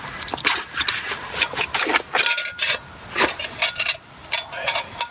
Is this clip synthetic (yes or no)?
no